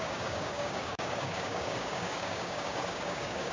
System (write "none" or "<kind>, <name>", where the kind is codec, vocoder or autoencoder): codec, DAC